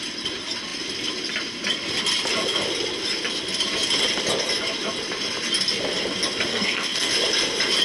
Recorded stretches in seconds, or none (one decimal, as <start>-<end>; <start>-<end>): 0.0-6.5; 7.1-7.8